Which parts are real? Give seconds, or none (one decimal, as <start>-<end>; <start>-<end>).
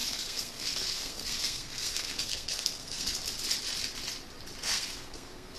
3.2-4.6